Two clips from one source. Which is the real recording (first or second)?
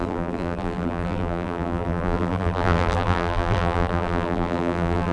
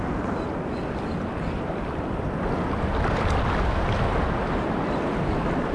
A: second